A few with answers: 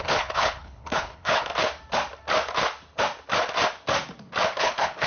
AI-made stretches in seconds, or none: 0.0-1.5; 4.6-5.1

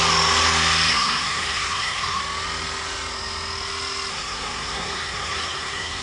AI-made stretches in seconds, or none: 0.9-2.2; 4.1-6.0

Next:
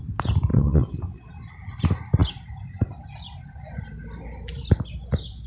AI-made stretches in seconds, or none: 0.5-1.3

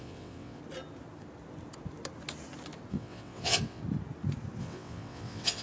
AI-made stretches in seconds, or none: 0.0-0.6; 2.9-3.8; 4.6-5.6